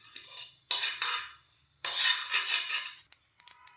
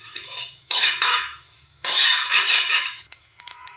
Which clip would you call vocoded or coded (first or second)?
second